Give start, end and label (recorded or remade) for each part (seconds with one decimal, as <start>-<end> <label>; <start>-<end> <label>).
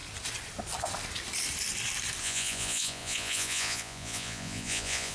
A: 0.0-2.2 recorded; 2.2-5.1 remade